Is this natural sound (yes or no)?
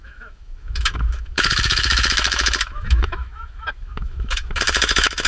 no